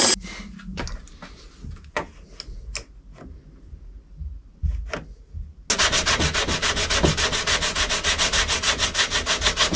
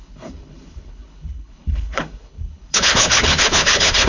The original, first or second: first